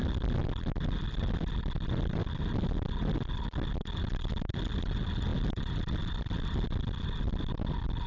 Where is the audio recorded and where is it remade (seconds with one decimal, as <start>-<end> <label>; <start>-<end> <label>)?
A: 0.0-8.1 recorded